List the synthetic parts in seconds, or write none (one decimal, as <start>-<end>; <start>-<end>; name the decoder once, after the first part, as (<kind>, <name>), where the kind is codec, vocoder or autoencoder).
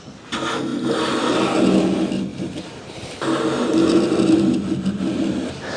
2.3-3.1 (vocoder, BigVGAN v2)